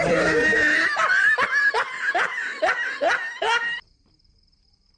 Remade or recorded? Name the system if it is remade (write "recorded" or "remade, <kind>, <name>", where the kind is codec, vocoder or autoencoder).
recorded